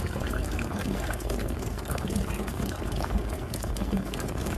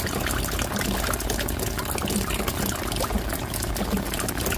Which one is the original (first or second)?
second